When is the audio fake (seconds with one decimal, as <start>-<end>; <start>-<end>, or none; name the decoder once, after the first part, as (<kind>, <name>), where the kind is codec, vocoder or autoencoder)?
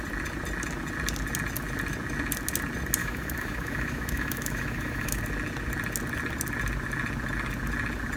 3.0-5.2 (autoencoder, DAC-VAE)